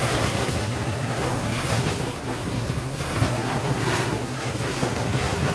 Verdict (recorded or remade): remade